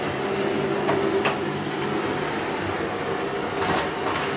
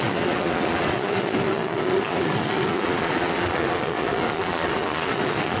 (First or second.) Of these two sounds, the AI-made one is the second